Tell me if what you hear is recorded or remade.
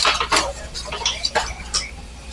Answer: remade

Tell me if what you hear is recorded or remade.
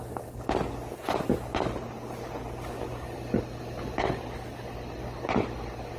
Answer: recorded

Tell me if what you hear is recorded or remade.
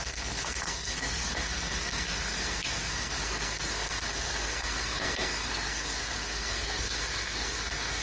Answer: remade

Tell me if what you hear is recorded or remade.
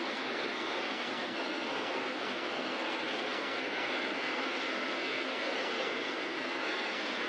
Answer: remade